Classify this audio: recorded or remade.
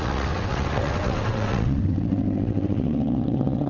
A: remade